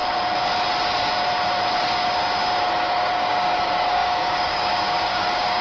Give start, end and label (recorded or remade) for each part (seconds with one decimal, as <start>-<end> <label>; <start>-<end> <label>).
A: 0.0-2.9 recorded; 2.9-5.6 remade

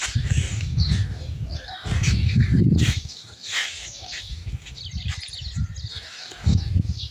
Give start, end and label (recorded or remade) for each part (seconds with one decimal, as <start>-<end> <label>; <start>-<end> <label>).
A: 0.0-4.8 remade; 4.8-5.9 recorded; 5.9-7.1 remade

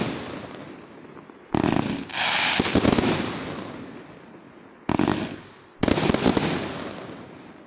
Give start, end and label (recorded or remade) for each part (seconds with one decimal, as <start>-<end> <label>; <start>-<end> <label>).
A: 0.0-7.7 recorded

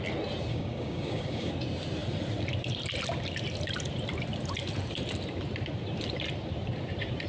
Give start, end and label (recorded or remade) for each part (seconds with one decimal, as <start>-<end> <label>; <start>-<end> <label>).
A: 0.0-0.5 recorded; 0.5-1.5 remade; 1.5-7.3 recorded

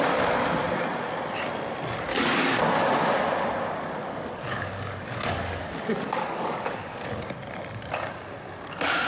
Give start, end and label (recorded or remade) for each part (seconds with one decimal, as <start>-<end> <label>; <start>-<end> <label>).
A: 0.0-2.1 recorded; 2.1-2.6 remade; 2.6-4.0 recorded; 4.0-7.2 remade; 7.2-9.1 recorded

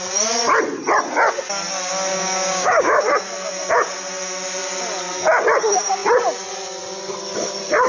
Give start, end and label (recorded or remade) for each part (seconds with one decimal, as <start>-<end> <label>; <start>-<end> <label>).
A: 0.0-2.1 recorded; 2.1-3.0 remade; 3.0-7.9 recorded

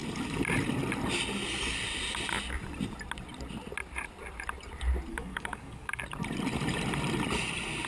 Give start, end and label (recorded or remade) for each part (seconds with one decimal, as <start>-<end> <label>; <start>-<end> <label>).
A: 0.0-5.1 recorded; 5.1-6.0 remade; 6.0-7.9 recorded